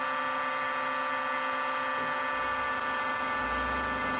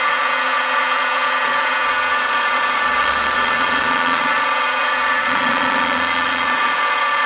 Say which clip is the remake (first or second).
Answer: second